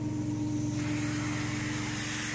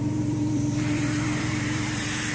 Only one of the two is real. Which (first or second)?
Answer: first